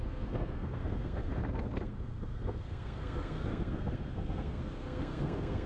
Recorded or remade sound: remade